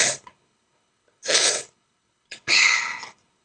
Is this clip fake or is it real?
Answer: fake